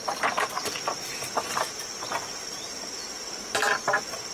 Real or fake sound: real